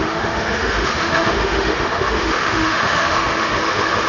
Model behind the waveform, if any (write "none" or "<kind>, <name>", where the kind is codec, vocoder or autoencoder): autoencoder, DAC-VAE